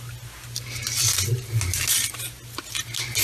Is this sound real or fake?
real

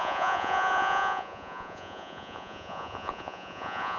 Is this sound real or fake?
fake